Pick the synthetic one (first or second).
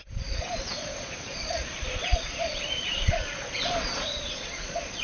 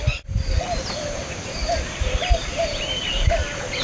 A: first